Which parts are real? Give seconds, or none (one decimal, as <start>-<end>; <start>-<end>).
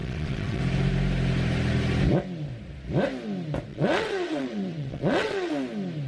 0.6-3.7; 5.5-6.1